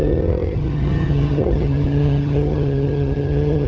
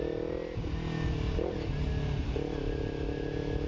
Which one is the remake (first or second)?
first